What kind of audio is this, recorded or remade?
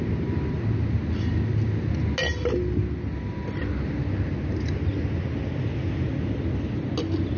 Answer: recorded